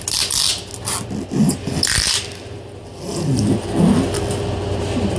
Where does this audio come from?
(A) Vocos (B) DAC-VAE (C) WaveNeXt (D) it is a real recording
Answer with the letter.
D